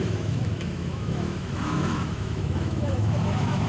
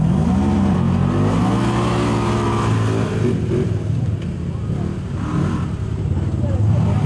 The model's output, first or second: first